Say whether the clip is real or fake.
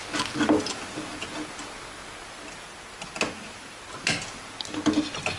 real